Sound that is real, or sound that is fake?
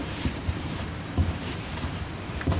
fake